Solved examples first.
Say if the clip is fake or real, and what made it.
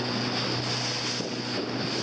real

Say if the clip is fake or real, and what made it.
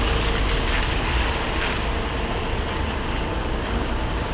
real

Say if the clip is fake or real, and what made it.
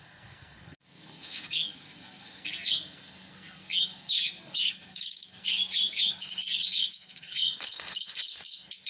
fake, codec, SNAC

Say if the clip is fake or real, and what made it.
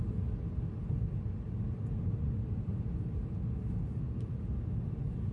real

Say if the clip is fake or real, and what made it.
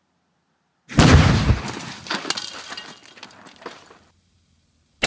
real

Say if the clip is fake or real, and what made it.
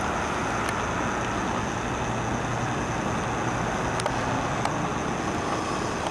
real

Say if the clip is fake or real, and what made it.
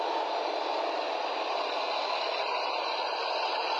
real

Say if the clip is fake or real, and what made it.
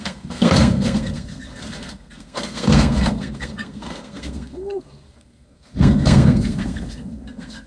fake, codec, SNAC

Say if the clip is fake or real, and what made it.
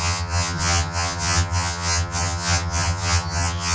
fake, vocoder, HiFi-GAN